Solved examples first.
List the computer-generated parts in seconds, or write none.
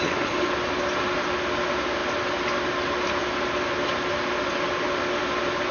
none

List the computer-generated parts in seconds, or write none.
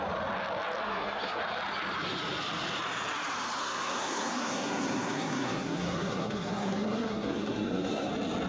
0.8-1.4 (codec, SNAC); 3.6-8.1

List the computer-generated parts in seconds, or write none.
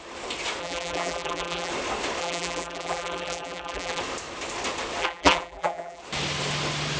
0.6-1.7 (vocoder, BigVGAN v2); 2.2-4.0; 5.0-6.0